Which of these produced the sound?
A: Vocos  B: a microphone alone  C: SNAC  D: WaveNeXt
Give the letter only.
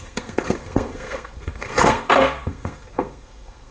C